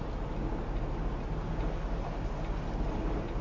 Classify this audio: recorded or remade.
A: recorded